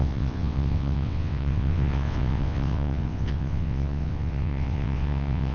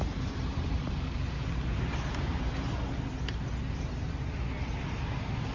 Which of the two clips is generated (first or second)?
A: first